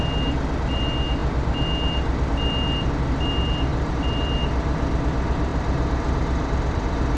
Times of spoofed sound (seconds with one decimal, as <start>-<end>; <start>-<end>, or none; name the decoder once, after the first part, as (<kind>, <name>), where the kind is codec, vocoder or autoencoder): 5.5-7.2 (vocoder, BigVGAN v2)